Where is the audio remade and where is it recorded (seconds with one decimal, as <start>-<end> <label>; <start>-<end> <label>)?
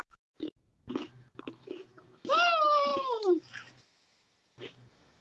0.0-5.2 remade